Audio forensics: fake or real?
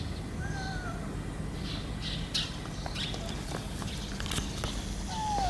real